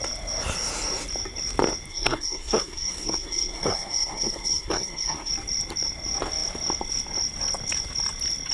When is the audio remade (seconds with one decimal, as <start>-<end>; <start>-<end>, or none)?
1.9-5.3